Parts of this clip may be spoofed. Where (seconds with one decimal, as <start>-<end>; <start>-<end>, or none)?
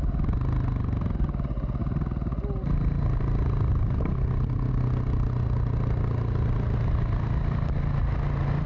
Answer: none